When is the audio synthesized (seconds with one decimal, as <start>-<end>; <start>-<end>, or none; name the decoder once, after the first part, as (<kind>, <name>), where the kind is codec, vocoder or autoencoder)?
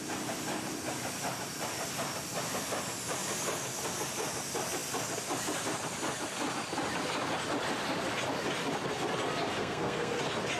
9.6-10.2 (codec, SNAC)